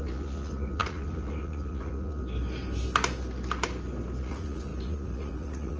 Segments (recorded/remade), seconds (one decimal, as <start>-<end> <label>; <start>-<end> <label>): 0.0-2.2 remade; 2.2-4.2 recorded; 4.2-5.8 remade